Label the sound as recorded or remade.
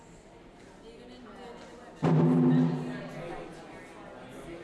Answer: recorded